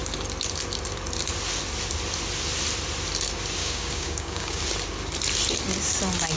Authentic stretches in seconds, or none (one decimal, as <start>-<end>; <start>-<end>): 0.0-3.6; 4.6-6.4